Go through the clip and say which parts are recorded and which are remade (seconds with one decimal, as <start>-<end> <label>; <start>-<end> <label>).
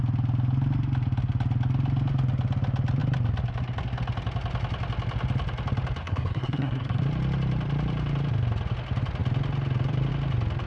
0.0-6.0 recorded; 6.0-7.0 remade; 7.0-10.7 recorded